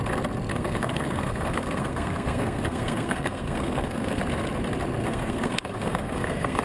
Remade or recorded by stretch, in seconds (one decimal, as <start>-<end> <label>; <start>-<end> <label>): 0.0-0.5 recorded; 0.5-4.2 remade; 4.2-5.0 recorded; 5.0-6.6 remade